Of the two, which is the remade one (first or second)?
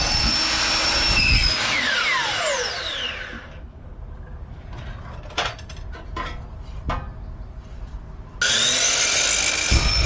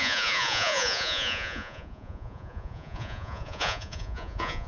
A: second